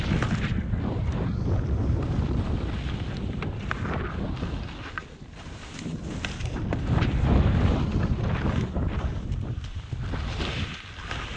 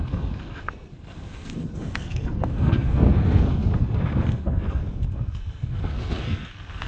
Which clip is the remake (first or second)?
second